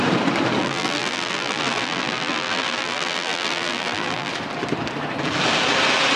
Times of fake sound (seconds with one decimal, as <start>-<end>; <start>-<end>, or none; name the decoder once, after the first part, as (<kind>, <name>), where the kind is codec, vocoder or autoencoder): 0.6-4.3 (vocoder, BigVGAN v2)